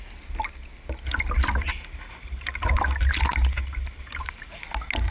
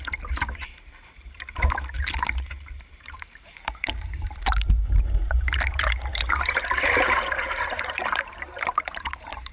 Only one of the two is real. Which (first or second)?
first